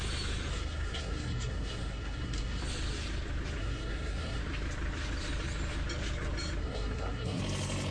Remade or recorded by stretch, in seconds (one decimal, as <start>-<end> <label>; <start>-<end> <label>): 0.0-0.5 recorded; 0.5-2.6 remade; 2.6-3.6 recorded; 3.6-4.4 remade; 4.4-6.6 recorded; 6.6-7.4 remade; 7.4-7.9 recorded